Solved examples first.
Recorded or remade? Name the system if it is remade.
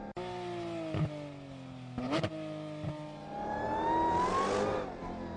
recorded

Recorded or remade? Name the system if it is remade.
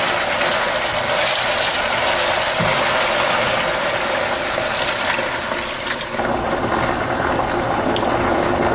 recorded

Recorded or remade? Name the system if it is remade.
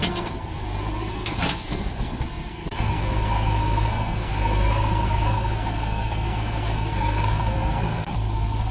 remade, codec, SNAC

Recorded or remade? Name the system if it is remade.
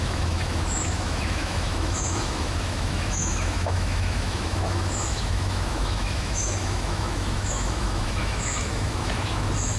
remade, autoencoder, DAC-VAE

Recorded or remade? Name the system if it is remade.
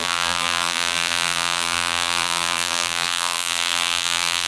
remade, vocoder, BigVGAN v2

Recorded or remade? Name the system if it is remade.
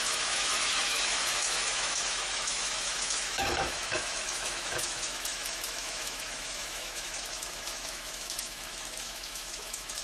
remade, autoencoder, DAC-VAE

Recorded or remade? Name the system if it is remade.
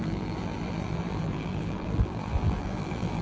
remade, vocoder, BigVGAN v2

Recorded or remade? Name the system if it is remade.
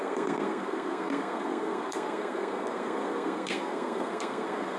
remade, codec, SNAC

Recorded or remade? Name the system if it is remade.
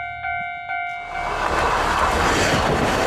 recorded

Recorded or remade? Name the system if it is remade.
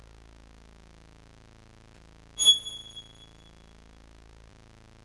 recorded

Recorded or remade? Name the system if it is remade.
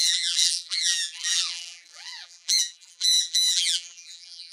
remade, vocoder, BigVGAN v2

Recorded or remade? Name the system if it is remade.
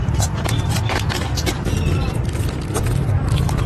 remade, vocoder, BigVGAN v2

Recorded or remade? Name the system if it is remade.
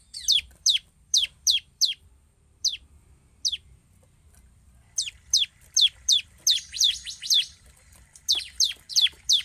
remade, vocoder, BigVGAN v2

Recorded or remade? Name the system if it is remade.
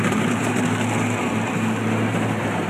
recorded